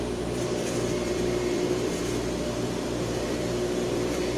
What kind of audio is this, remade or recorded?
remade